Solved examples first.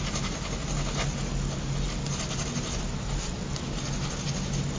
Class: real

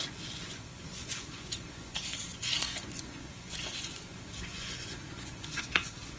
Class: fake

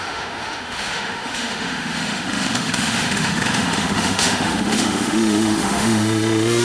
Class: fake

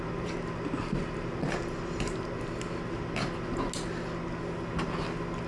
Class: real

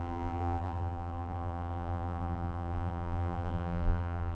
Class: fake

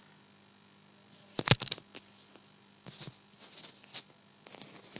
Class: real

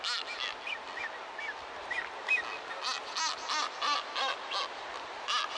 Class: real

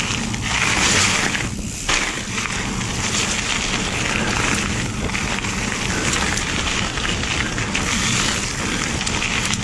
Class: real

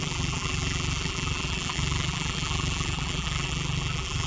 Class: fake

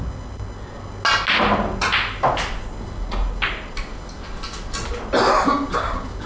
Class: real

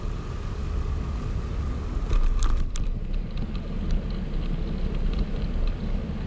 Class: real